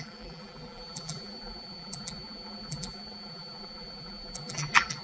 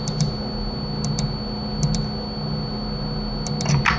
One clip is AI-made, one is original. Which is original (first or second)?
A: second